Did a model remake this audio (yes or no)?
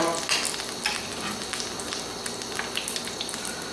no